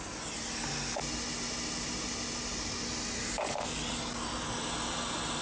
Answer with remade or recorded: recorded